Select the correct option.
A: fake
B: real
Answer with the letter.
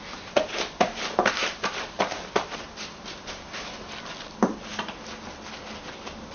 B